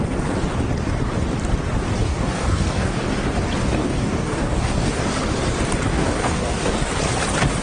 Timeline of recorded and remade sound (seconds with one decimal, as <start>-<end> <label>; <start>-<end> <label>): 0.0-2.0 recorded; 2.0-3.0 remade; 3.0-3.6 recorded; 3.6-5.0 remade; 5.0-5.9 recorded; 5.9-6.9 remade; 6.9-7.6 recorded